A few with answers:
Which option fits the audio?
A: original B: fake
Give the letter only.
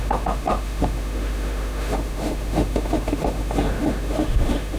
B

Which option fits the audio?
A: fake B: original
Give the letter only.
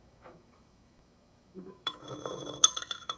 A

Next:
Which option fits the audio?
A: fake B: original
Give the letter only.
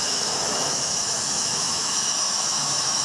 A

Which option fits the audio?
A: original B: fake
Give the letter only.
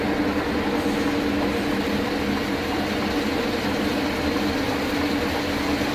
A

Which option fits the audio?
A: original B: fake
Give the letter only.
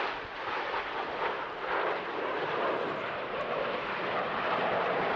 A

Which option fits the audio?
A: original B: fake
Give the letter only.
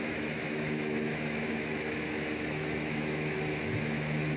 B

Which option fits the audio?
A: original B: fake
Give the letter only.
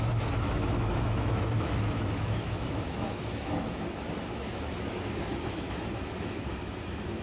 B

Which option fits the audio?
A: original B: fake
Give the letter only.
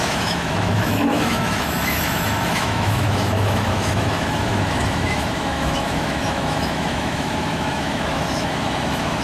B